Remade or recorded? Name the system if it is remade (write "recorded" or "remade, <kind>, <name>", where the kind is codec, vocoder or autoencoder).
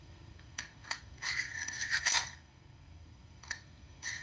remade, codec, SNAC